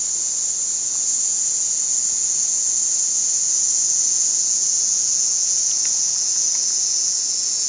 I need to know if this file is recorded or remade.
remade